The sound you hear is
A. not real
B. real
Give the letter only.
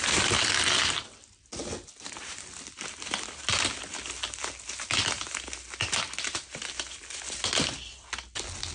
B